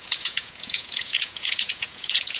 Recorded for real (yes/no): no